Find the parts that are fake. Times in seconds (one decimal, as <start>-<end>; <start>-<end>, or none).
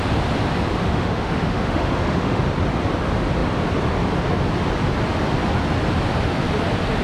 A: 0.8-2.4